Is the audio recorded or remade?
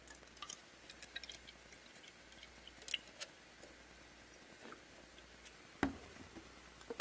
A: recorded